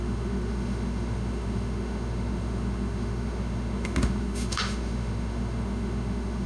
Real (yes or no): no